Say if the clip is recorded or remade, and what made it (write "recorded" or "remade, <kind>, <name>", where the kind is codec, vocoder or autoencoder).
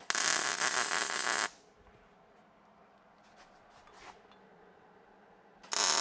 recorded